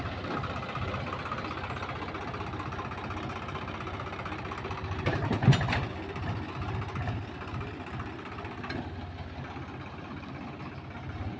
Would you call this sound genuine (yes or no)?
yes